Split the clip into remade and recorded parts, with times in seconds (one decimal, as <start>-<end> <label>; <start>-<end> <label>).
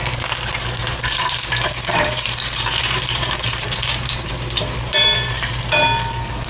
0.0-0.8 recorded; 0.8-4.3 remade; 4.3-4.8 recorded; 4.8-5.6 remade; 5.6-6.5 recorded